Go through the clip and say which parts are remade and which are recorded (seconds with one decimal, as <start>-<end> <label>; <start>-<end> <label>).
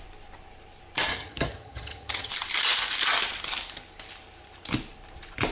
0.0-1.1 recorded; 1.1-2.3 remade; 2.3-5.5 recorded